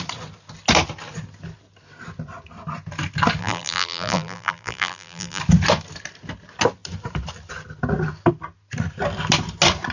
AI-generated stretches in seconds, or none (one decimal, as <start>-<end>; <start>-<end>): 3.4-5.4